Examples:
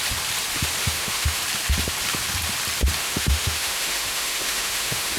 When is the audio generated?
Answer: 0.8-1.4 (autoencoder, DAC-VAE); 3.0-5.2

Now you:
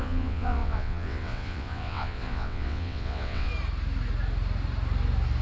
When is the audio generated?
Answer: 0.0-3.5 (vocoder, WaveNeXt)

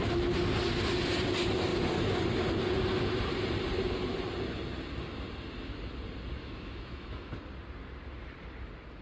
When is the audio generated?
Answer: 6.4-7.3 (autoencoder, DAC-VAE)

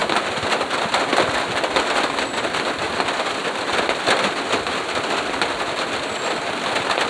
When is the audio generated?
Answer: 0.0-2.4 (vocoder, BigVGAN v2)

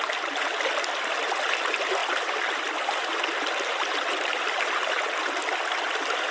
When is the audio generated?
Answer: none

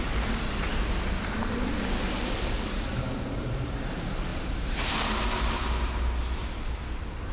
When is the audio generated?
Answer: 0.0-0.7 (vocoder, BigVGAN v2); 1.4-5.6

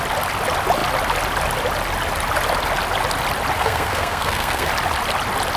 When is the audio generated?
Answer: 3.6-4.7 (codec, SNAC)